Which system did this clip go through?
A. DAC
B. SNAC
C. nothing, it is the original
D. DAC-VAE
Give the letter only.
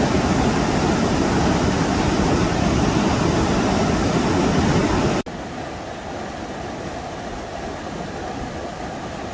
C